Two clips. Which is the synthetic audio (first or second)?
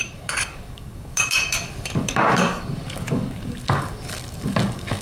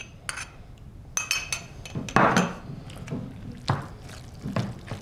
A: first